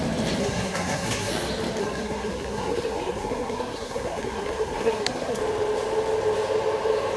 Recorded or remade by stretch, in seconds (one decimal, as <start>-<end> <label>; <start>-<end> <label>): 0.0-0.4 recorded; 0.4-1.3 remade; 1.3-1.8 recorded; 1.8-5.4 remade; 5.4-7.2 recorded